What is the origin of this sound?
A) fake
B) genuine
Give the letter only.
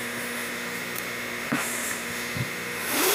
A